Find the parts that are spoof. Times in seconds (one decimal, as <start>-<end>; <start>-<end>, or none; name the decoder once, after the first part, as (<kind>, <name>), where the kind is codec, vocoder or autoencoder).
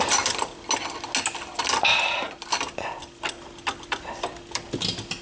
none